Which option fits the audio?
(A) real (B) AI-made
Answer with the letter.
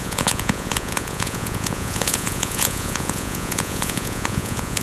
B